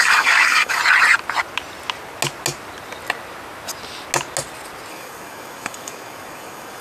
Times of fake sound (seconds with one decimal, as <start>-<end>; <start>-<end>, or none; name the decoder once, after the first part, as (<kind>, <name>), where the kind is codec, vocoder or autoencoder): 0.0-0.8 (codec, DAC); 4.9-6.8